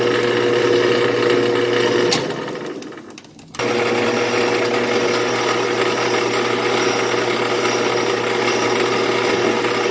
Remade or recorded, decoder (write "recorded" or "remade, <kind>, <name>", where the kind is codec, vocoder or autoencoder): recorded